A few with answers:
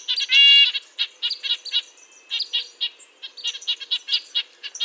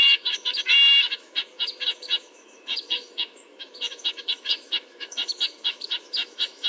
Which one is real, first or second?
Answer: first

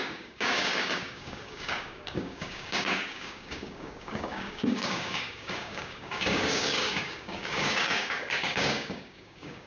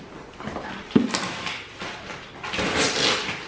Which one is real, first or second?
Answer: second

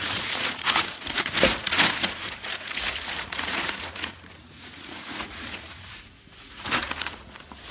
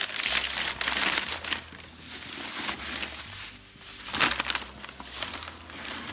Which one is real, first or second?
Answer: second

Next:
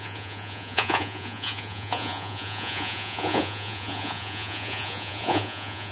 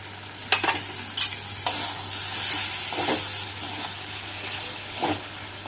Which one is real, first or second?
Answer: second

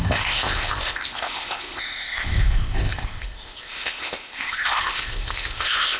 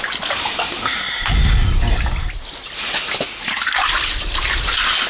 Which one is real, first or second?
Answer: second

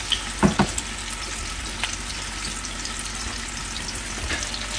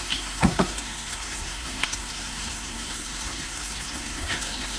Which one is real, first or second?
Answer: first